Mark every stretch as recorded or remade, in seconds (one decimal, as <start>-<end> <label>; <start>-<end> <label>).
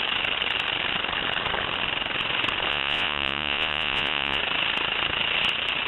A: 0.0-2.7 recorded; 2.7-4.4 remade; 4.4-5.9 recorded